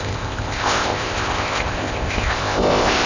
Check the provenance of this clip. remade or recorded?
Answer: remade